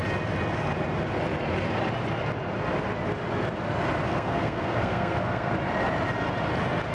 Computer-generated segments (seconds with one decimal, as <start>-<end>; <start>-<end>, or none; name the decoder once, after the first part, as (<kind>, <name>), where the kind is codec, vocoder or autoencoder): 4.1-5.5 (codec, SNAC)